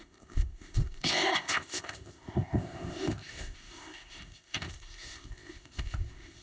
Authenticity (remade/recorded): remade